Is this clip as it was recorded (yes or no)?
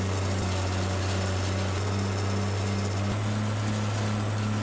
yes